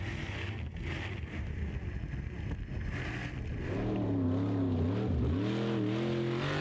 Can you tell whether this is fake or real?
real